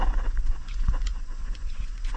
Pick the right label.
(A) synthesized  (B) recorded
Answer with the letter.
A